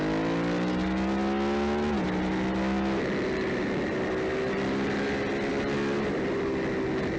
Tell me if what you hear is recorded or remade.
recorded